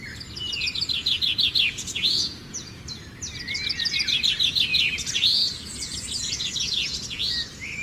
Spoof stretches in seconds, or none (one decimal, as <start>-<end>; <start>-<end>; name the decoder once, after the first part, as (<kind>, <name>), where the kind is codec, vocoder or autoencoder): 1.0-2.8 (vocoder, Vocos); 4.7-7.3